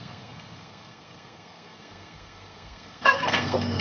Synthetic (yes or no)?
yes